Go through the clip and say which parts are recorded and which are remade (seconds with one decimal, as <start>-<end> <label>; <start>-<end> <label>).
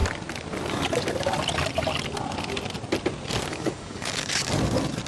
0.0-3.5 recorded; 3.5-4.5 remade; 4.5-5.1 recorded